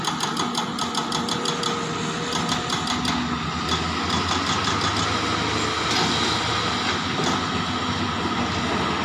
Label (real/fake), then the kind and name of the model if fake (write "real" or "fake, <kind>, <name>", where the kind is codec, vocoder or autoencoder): real